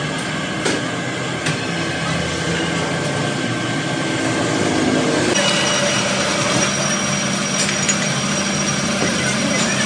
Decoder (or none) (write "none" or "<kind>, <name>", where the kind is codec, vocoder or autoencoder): none